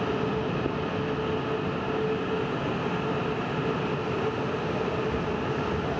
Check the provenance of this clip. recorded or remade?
recorded